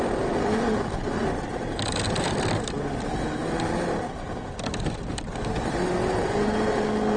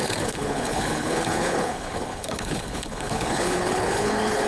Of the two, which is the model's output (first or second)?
second